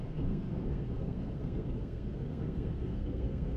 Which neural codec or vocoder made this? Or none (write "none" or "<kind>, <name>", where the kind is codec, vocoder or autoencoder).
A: codec, SNAC